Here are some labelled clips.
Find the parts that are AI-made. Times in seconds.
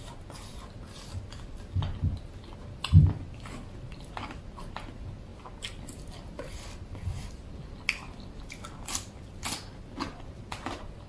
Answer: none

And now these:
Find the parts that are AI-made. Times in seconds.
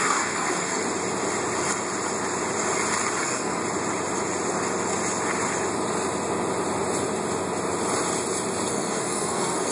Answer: 0.0-0.8 (codec, SNAC); 3.2-3.6; 8.7-9.7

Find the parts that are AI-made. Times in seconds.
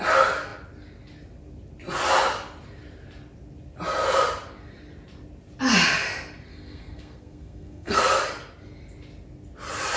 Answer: 6.5-8.0 (codec, SNAC)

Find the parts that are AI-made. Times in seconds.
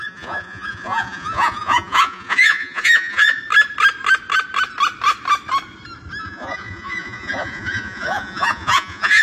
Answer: 0.0-3.4 (vocoder, Vocos); 6.2-9.2